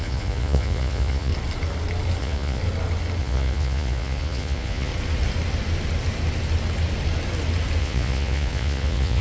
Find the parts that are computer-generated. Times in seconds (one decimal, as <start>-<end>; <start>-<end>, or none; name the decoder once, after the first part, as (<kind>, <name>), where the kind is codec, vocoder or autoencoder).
0.0-1.3 (vocoder, Vocos); 2.2-2.6; 3.2-4.9; 7.8-9.2